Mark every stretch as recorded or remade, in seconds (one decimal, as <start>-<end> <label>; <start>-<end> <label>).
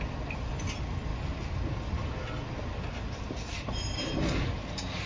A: 0.0-5.1 recorded